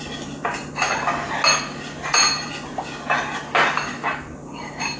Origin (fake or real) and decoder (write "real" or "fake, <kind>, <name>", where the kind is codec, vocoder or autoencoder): real